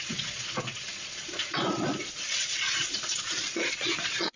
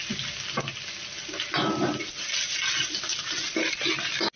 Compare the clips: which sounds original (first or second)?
second